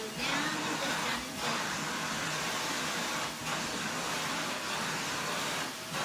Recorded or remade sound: recorded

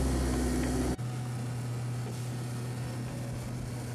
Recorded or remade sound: recorded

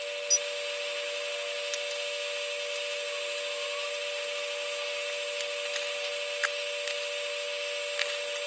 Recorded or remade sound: recorded